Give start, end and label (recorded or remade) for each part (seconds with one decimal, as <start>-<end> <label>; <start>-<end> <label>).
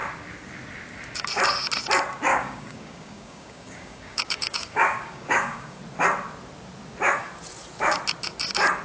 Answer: 0.0-2.3 recorded; 2.3-5.8 remade; 5.8-8.8 recorded